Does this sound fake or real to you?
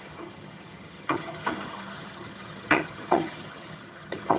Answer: fake